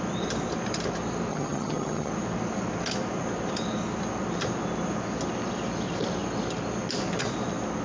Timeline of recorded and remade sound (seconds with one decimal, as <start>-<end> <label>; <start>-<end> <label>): 0.0-1.3 recorded; 1.3-2.1 remade; 2.1-7.8 recorded